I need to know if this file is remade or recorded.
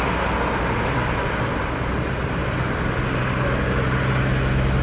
recorded